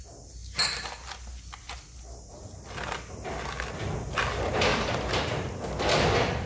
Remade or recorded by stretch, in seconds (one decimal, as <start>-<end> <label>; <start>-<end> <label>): 0.0-6.5 recorded